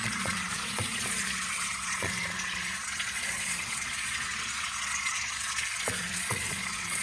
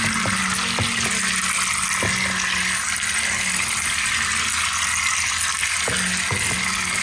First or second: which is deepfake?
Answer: first